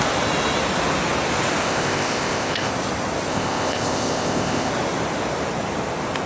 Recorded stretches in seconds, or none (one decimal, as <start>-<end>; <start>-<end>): 0.0-1.6; 2.7-3.3; 4.7-6.3